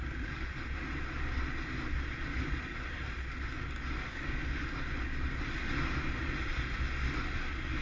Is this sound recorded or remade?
recorded